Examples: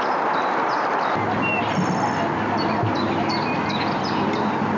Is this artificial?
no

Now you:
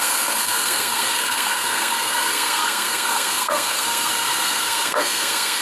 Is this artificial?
yes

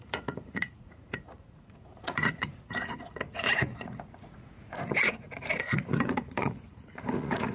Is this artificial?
yes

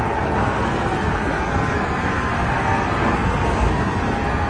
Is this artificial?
yes